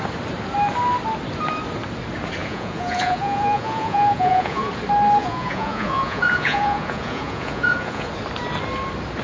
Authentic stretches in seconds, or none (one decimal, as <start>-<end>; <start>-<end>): 0.0-2.4; 4.7-5.2; 8.1-9.2